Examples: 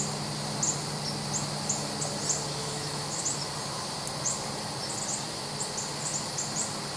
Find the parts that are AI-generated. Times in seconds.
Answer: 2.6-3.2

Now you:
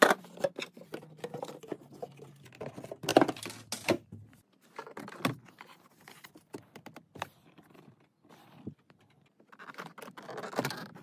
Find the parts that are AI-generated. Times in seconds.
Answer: none

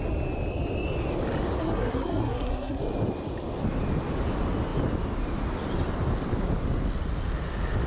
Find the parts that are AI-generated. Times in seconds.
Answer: 1.6-2.8

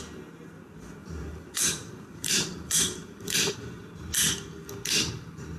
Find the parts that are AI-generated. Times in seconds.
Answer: 1.0-4.1

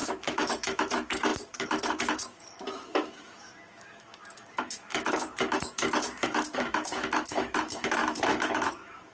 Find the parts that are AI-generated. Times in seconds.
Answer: 0.0-9.1

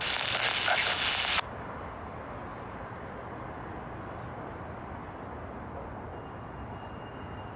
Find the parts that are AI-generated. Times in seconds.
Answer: 2.5-3.1

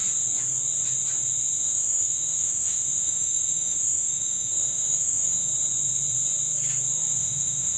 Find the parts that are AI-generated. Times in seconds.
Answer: 1.6-5.5; 7.2-7.8